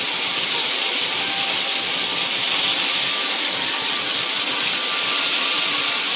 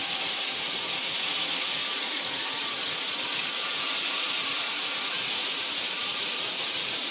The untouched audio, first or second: first